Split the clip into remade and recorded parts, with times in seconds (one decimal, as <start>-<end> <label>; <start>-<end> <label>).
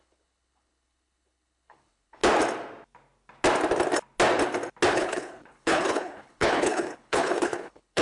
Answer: 0.0-2.2 remade; 2.2-4.9 recorded; 4.9-8.0 remade